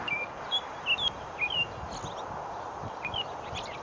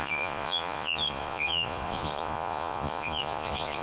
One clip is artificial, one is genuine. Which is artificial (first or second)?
second